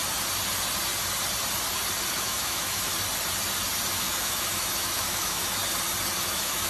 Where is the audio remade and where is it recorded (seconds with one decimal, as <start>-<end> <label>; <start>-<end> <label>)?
0.0-2.1 recorded; 2.1-2.9 remade; 2.9-3.9 recorded; 3.9-5.6 remade; 5.6-6.2 recorded; 6.2-6.7 remade

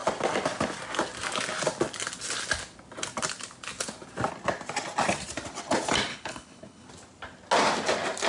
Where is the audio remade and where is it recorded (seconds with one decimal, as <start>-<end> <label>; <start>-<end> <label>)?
0.0-6.1 recorded; 6.1-6.9 remade; 6.9-8.3 recorded

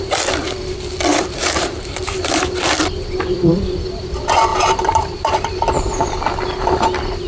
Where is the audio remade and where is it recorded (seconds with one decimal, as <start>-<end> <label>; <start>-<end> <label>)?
0.0-1.1 recorded; 1.1-2.8 remade; 2.8-4.5 recorded; 4.5-5.7 remade; 5.7-7.3 recorded